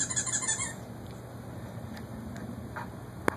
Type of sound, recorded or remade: recorded